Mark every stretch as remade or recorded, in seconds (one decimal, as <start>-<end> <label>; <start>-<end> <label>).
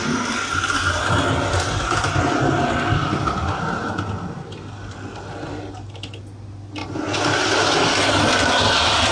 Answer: 0.0-9.1 recorded